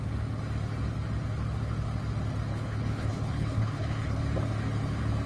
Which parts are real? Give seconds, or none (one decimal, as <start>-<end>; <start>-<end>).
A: 0.0-2.5; 4.2-5.3